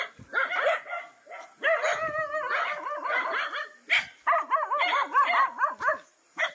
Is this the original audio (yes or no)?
yes